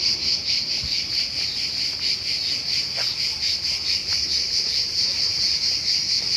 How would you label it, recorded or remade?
recorded